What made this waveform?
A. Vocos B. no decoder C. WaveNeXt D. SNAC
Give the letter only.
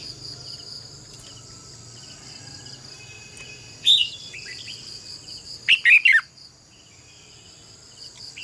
B